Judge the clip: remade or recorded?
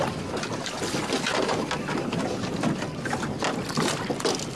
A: recorded